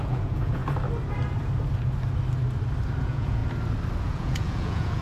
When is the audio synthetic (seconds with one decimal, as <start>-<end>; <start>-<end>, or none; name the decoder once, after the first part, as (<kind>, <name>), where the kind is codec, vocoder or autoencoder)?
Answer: 0.0-0.6 (vocoder, Vocos); 3.0-3.4; 4.0-5.0